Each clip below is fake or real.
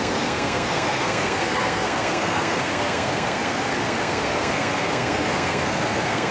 fake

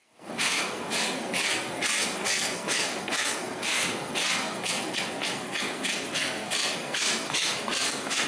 fake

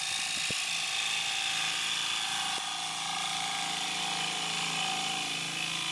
real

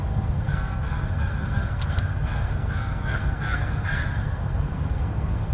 fake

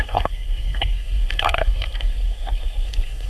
fake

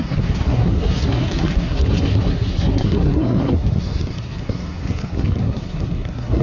fake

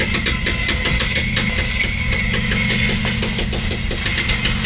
real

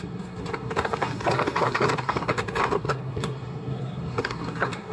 fake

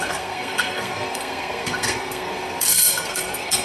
fake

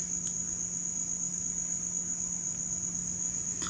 real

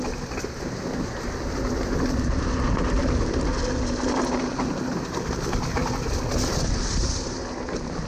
real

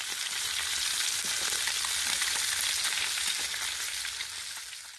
real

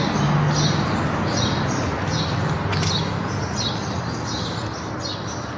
real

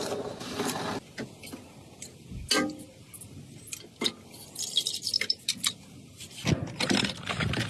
real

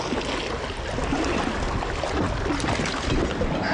real